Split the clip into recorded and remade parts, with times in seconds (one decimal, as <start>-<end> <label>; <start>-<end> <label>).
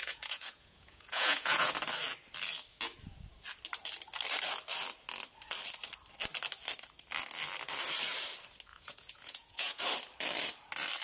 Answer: 0.0-1.7 remade; 1.7-8.7 recorded; 8.7-9.8 remade; 9.8-11.0 recorded